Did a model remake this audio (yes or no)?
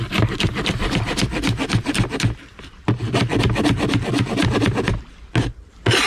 no